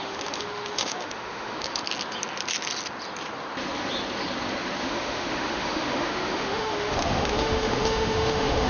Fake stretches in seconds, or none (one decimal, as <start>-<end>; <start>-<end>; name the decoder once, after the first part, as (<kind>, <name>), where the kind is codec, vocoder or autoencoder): 0.0-1.8 (autoencoder, DAC-VAE); 4.8-8.7